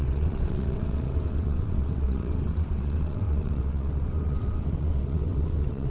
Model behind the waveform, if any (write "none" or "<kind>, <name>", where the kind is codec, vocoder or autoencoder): vocoder, WaveNeXt